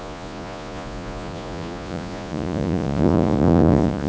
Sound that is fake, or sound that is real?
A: fake